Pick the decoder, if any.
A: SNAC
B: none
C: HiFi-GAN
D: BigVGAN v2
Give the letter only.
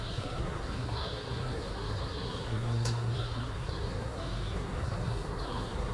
A